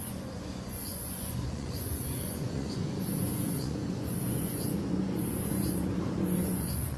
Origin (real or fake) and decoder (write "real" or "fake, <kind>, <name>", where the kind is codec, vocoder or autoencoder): fake, vocoder, Vocos